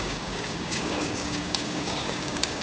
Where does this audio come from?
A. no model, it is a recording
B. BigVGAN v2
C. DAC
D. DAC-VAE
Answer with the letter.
C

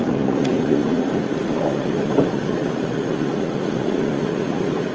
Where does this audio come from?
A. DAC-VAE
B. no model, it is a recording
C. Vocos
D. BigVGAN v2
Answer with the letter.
C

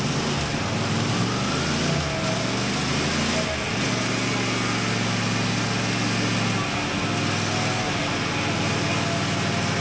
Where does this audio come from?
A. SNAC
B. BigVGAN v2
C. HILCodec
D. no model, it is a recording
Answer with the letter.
D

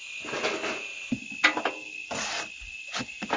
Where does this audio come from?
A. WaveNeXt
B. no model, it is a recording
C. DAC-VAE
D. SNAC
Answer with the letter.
B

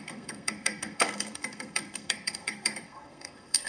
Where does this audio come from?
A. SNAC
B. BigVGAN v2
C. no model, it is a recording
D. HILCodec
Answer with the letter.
A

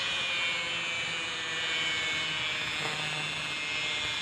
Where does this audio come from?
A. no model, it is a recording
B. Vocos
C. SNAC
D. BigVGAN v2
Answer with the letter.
A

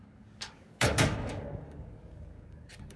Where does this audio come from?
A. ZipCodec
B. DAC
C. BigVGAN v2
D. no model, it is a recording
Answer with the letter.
B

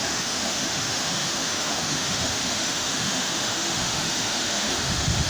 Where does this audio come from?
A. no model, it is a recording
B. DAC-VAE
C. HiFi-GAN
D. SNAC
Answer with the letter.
B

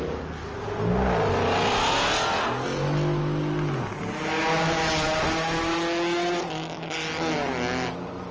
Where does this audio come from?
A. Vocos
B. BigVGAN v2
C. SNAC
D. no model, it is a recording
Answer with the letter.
D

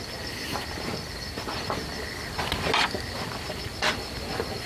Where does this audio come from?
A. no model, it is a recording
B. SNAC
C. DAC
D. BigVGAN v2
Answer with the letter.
A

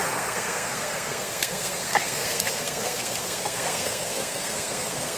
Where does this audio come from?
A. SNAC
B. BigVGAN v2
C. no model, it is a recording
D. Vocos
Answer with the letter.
A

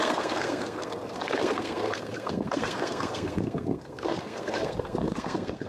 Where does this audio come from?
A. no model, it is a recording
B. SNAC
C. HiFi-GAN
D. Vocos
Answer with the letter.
B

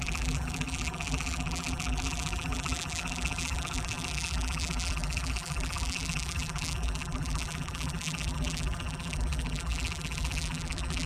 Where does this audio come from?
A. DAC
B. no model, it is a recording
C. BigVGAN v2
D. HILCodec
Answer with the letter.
C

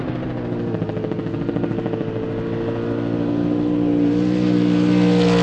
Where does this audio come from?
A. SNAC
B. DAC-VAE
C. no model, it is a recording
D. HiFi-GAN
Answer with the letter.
C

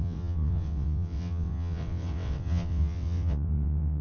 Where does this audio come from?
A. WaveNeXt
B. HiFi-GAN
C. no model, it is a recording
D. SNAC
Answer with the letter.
A